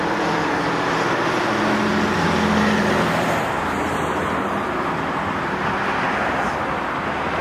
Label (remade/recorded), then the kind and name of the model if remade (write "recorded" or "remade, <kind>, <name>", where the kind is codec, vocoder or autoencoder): recorded